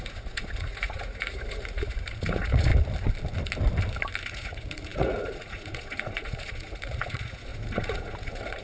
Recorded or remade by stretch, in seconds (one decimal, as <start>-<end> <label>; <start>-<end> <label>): 0.0-2.7 remade; 2.7-4.3 recorded; 4.3-8.6 remade

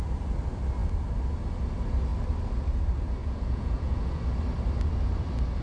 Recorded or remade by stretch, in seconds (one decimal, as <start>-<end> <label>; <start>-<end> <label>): 0.0-3.2 recorded; 3.2-4.2 remade; 4.2-5.6 recorded

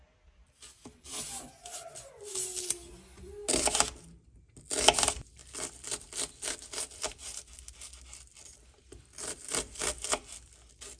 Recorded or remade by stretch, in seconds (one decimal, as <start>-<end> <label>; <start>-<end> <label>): 0.0-11.0 recorded

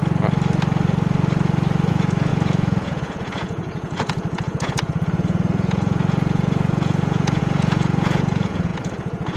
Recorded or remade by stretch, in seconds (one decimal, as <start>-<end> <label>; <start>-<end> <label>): 0.0-1.9 recorded; 1.9-9.4 remade

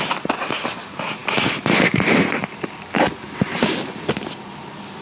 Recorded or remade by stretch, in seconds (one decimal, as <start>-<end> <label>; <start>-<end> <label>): 0.0-5.0 recorded

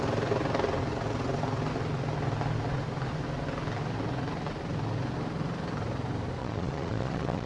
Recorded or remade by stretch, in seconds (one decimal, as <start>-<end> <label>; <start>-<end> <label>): 0.0-6.4 recorded; 6.4-7.5 remade

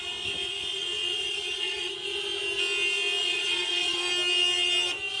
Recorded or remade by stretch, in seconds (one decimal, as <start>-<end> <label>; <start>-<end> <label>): 0.0-0.7 recorded; 0.7-1.9 remade; 1.9-3.2 recorded; 3.2-4.1 remade; 4.1-5.2 recorded